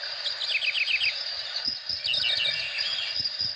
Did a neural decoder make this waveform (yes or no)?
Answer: no